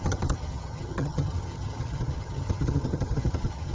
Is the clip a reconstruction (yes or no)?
yes